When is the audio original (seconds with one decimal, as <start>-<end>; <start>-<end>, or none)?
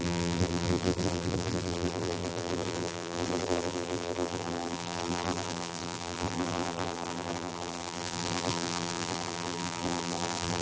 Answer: none